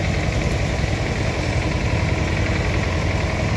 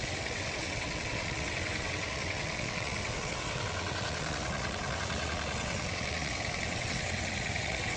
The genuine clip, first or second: first